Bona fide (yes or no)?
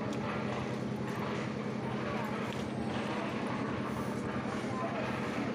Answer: yes